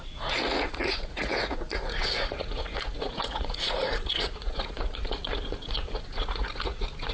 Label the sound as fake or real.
fake